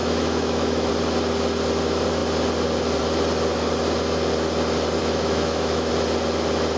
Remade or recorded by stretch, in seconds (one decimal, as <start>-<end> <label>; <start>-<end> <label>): 0.0-0.9 remade; 0.9-5.0 recorded; 5.0-5.9 remade; 5.9-6.8 recorded